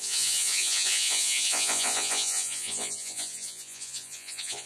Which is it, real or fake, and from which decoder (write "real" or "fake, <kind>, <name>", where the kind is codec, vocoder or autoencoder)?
fake, vocoder, Vocos